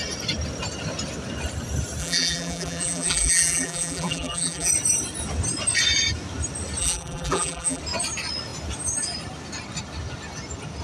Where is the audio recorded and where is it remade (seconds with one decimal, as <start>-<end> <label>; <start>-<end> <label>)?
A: 0.0-2.0 recorded; 2.0-4.7 remade; 4.7-6.8 recorded; 6.8-7.8 remade; 7.8-10.8 recorded